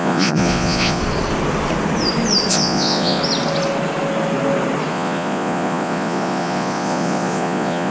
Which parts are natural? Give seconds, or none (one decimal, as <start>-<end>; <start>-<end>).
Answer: 1.0-2.5; 3.2-4.9